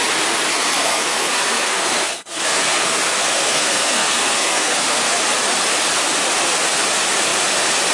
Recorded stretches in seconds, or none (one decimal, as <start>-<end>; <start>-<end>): 0.0-0.5; 5.2-7.9